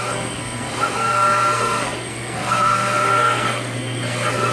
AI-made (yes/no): yes